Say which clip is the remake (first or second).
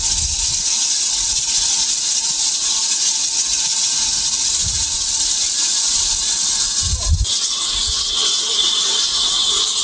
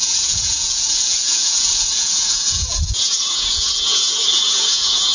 second